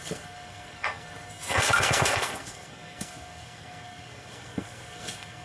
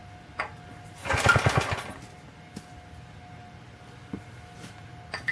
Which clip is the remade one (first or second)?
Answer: first